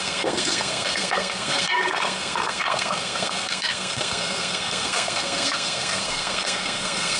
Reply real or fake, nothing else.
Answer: fake